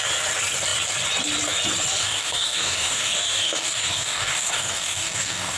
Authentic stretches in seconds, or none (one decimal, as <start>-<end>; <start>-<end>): 0.0-2.0

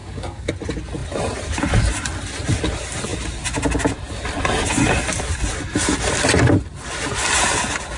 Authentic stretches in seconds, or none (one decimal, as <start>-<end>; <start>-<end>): 0.5-8.0

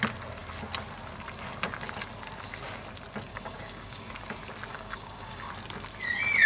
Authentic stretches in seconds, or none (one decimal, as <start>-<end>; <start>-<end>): 0.0-3.3; 4.1-4.7; 5.5-6.5